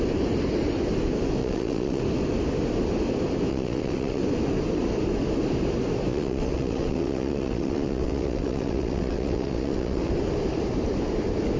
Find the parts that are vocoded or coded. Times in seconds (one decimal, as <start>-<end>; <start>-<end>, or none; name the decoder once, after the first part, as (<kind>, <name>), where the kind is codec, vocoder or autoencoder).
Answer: 1.4-2.0 (vocoder, WaveNeXt); 3.5-4.2; 6.1-10.1